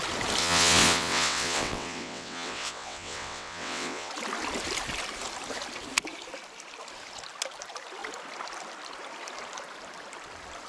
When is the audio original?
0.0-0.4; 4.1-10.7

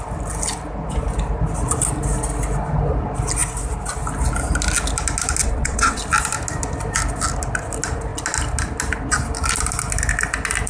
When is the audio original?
0.0-5.4; 6.0-10.7

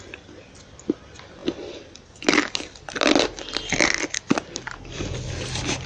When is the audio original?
0.0-5.9